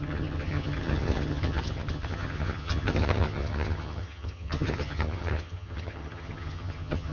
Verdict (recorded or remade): remade